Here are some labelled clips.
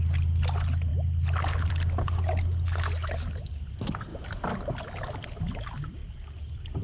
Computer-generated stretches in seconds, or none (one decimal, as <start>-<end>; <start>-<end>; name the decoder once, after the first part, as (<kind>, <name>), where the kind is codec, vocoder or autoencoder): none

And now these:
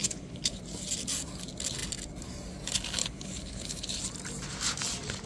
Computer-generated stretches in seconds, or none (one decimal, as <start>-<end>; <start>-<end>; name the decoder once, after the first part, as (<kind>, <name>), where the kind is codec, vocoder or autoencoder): 0.0-0.6 (codec, HILCodec); 3.0-4.0

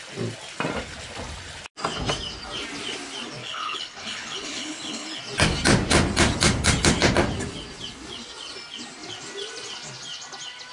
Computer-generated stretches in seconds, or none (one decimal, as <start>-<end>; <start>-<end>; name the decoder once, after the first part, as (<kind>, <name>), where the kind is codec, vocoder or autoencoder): 3.4-5.2 (codec, HILCodec)

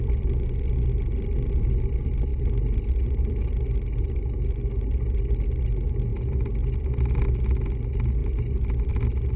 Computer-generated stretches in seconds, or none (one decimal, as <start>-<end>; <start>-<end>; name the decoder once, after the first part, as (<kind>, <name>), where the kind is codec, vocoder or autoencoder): none

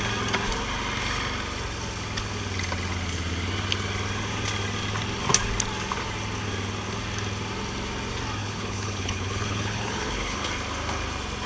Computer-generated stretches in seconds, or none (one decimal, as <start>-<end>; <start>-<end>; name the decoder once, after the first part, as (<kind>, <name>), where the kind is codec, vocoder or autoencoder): 8.4-10.5 (codec, HILCodec)

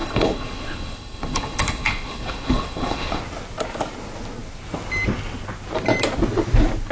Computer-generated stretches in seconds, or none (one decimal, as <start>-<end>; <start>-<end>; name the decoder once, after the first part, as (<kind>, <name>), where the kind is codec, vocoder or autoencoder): 0.0-3.2 (codec, HILCodec)

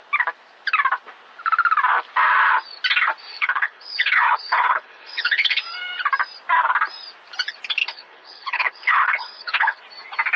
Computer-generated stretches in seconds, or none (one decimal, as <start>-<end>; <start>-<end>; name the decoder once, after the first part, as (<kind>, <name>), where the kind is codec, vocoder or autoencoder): 3.3-5.6 (codec, HILCodec); 7.8-9.8